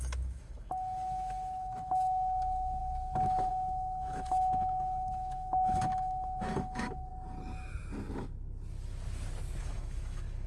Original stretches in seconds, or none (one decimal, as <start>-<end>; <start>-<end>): 7.1-9.6